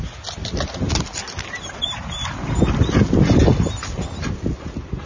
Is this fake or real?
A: real